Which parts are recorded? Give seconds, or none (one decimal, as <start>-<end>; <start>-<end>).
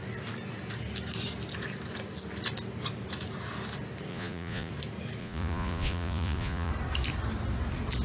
0.0-4.1; 4.7-5.2; 6.7-8.0